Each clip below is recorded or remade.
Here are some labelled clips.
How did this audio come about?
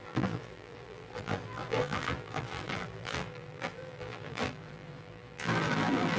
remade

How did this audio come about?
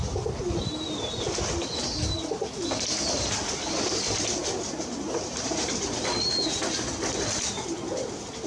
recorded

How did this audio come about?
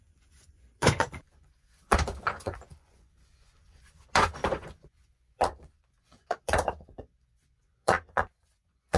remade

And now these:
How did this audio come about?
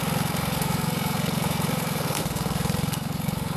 remade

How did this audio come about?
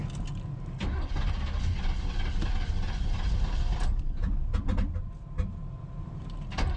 recorded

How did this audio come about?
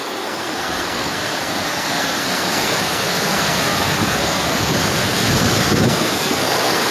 remade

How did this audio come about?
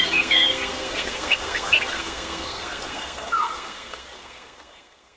remade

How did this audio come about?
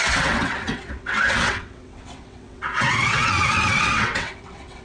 remade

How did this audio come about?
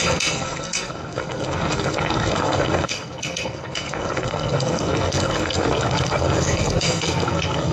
remade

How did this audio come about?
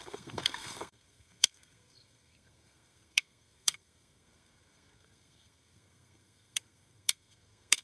remade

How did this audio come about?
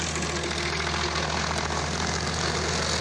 recorded